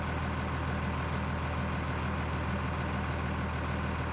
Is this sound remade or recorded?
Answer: recorded